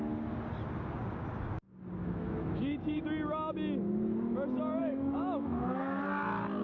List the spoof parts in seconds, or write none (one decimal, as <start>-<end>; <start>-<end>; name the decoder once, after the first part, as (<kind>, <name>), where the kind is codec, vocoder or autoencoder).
2.0-3.0 (autoencoder, DAC-VAE); 4.8-6.0